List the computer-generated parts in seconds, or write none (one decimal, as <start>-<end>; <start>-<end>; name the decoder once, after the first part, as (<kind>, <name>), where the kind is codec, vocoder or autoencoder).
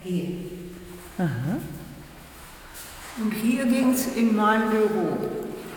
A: 0.0-3.3 (autoencoder, DAC-VAE); 4.0-5.2